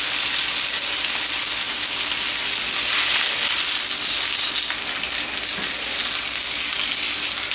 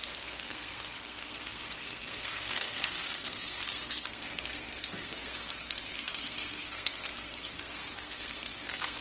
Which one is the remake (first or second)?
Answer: second